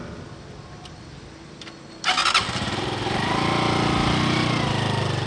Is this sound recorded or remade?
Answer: recorded